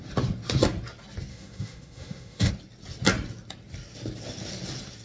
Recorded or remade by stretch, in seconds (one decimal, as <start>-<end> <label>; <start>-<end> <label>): 0.0-1.3 recorded; 1.3-2.5 remade; 2.5-5.0 recorded

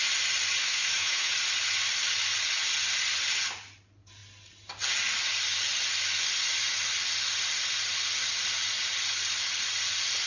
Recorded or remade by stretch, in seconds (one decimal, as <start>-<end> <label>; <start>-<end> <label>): 0.0-0.6 recorded; 0.6-1.3 remade; 1.3-10.3 recorded

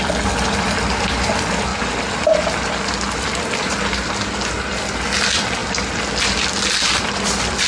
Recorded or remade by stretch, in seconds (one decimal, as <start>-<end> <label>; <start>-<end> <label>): 0.0-7.7 recorded

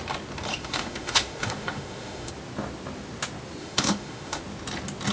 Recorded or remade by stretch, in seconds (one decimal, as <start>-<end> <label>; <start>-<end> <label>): 0.0-0.5 recorded; 0.5-2.3 remade; 2.3-3.6 recorded; 3.6-4.4 remade; 4.4-5.1 recorded